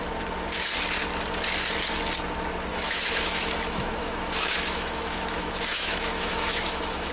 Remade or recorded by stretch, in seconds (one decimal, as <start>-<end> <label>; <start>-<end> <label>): 0.0-2.7 recorded; 2.7-7.1 remade